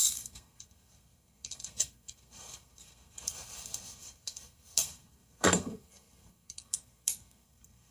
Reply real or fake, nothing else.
fake